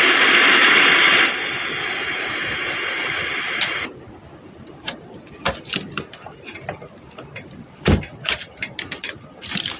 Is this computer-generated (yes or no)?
yes